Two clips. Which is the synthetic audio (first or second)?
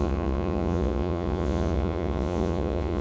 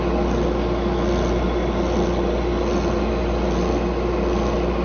first